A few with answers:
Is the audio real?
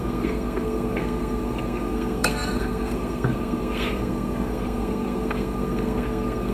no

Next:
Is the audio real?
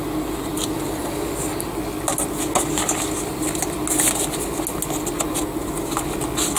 yes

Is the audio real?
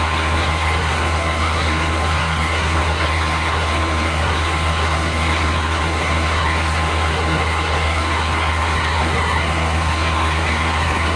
no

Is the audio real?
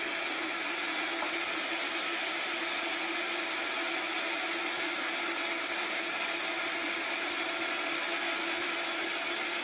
yes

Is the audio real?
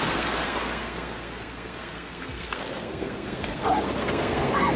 no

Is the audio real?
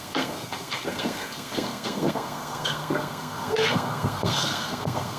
no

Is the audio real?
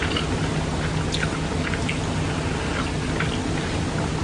yes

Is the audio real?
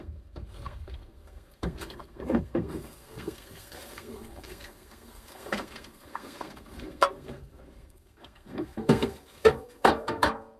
no